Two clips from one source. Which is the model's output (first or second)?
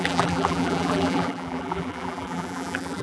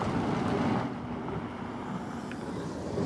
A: first